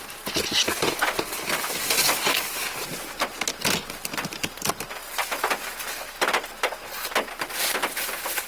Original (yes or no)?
yes